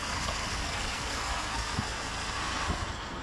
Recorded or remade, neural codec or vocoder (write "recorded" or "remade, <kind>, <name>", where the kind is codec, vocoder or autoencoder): remade, codec, SNAC